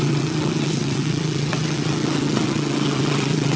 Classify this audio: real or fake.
fake